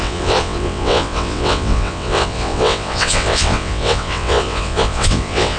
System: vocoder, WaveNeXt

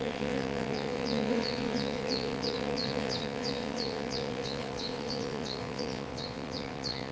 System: vocoder, WaveNeXt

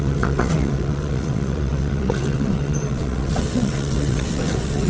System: vocoder, WaveNeXt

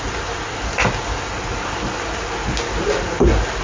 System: none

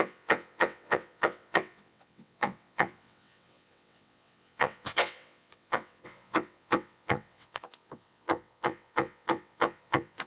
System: vocoder, WaveNeXt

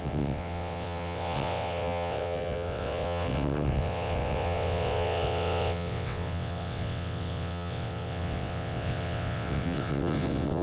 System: vocoder, WaveNeXt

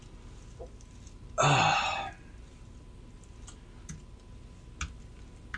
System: none